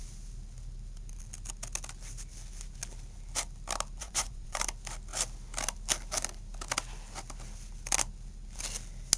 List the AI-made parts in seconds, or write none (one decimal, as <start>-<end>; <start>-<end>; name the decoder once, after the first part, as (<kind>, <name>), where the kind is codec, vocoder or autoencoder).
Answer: 4.0-4.6 (vocoder, Vocos)

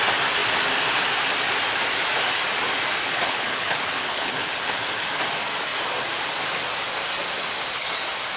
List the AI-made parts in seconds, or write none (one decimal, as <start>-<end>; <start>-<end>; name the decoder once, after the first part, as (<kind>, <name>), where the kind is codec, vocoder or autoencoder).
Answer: 3.1-4.7 (codec, HILCodec)

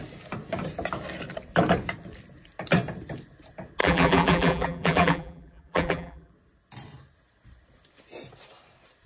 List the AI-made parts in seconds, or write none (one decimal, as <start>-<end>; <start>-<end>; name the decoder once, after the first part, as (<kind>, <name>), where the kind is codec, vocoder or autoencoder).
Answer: 3.8-6.3 (vocoder, BigVGAN v2)

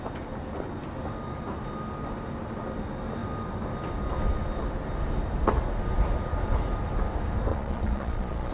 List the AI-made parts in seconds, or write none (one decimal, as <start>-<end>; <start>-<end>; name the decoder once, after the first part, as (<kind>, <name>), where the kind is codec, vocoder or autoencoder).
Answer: 7.5-8.5 (vocoder, Vocos)